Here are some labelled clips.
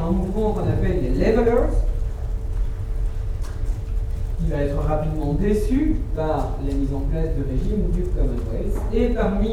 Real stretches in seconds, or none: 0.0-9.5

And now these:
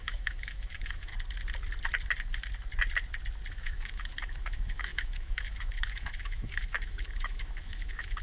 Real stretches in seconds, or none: 1.1-3.5

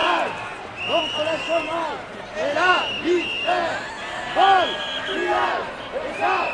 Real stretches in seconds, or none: 0.0-6.5

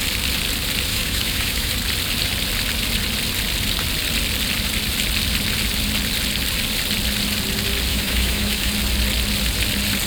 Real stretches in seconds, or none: 0.0-0.9; 1.7-7.9; 8.7-10.1

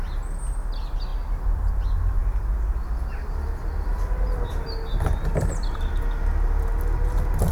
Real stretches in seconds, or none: 0.0-7.5